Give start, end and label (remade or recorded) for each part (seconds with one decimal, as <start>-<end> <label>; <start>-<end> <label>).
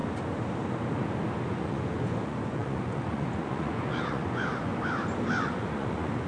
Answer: 0.0-1.5 recorded; 1.5-4.7 remade; 4.7-5.4 recorded; 5.4-6.3 remade